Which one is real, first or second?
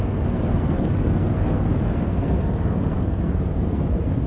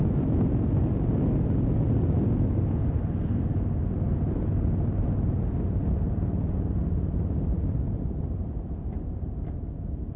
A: second